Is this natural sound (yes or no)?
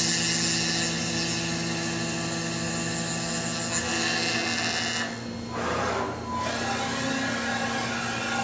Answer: yes